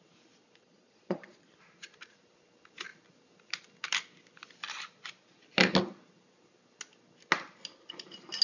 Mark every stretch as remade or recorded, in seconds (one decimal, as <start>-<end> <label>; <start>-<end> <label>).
0.0-0.6 recorded; 0.6-1.5 remade; 1.5-8.4 recorded